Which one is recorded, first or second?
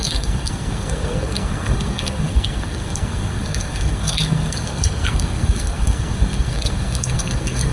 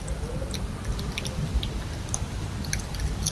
second